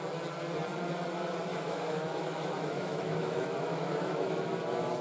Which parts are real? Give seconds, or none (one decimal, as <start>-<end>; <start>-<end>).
0.0-1.5; 4.5-5.0